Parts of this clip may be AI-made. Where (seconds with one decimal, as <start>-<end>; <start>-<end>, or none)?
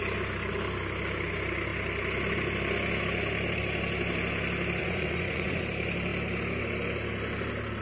4.8-5.6